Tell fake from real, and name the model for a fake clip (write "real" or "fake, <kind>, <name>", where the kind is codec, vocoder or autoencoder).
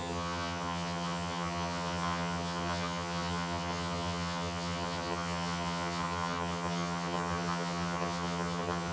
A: fake, vocoder, HiFi-GAN